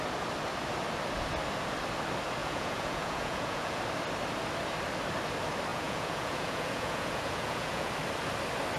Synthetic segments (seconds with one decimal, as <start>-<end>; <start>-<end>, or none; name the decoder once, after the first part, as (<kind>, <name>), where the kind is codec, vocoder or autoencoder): 2.4-3.8 (vocoder, Vocos); 5.7-7.9